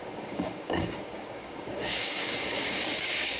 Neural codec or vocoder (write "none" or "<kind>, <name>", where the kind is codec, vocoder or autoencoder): codec, DAC